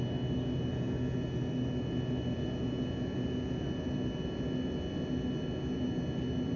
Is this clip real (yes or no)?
yes